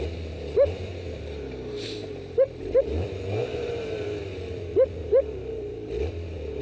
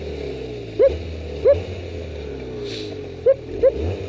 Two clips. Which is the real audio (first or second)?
second